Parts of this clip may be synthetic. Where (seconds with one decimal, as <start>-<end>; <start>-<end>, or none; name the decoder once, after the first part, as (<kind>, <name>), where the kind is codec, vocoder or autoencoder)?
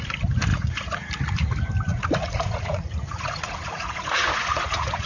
0.5-1.1 (vocoder, Vocos); 1.9-5.1